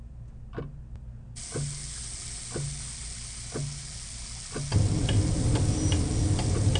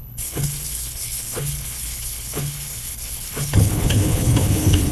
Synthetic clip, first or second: second